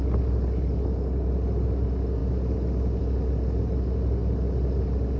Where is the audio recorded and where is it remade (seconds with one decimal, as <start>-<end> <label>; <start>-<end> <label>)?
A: 0.0-5.2 recorded